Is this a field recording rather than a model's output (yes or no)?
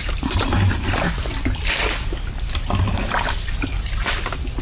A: yes